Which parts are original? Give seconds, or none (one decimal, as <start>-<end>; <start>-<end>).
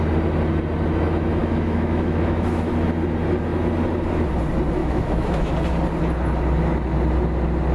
0.0-1.4; 2.7-4.8; 5.5-7.7